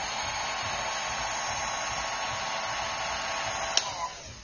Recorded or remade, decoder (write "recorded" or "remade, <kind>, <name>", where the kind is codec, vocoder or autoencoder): recorded